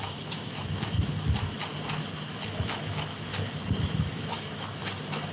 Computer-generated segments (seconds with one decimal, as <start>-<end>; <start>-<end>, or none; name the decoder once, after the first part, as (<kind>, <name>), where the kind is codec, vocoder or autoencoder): 0.0-1.7 (autoencoder, DAC-VAE); 2.3-3.3; 3.8-5.3